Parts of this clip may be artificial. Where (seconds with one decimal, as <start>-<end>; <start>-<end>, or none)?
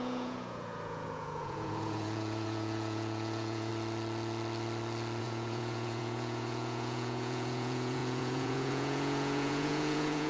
0.0-3.7; 5.2-10.3